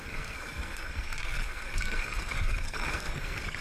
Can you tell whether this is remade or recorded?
remade